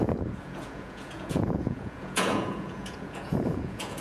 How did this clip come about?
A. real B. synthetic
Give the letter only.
B